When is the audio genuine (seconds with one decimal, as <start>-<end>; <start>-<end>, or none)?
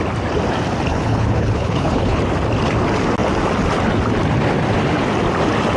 0.0-0.9; 2.2-5.8